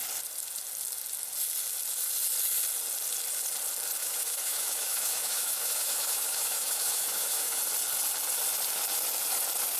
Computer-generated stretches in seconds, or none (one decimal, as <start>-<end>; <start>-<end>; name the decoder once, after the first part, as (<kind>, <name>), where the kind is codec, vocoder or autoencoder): 4.0-7.6 (autoencoder, DAC-VAE)